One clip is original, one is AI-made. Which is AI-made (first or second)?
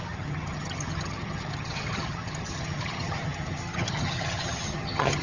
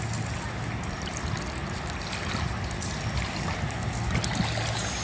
first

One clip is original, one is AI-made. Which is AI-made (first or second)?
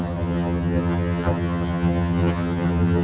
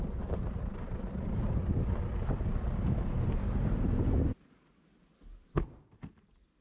first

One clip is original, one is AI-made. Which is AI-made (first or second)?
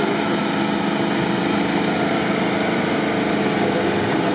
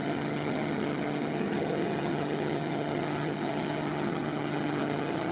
second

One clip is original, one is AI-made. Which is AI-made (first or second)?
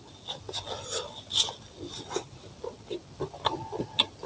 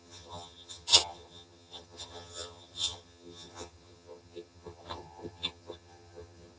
second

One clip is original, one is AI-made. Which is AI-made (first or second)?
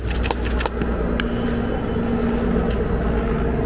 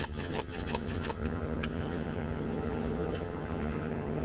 second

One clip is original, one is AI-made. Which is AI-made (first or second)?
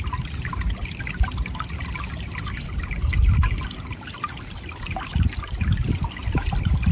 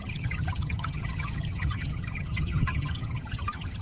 second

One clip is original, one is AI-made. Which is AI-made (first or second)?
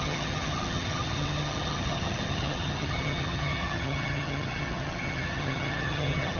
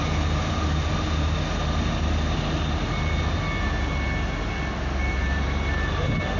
first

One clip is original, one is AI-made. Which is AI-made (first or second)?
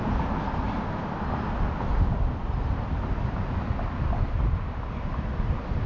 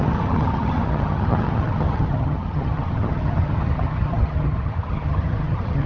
second